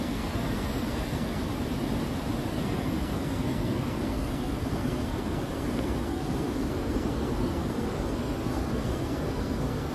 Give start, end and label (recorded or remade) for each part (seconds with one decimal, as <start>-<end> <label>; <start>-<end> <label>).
0.0-1.5 remade; 1.5-2.5 recorded; 2.5-9.9 remade